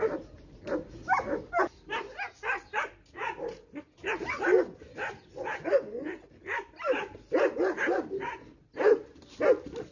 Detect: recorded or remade recorded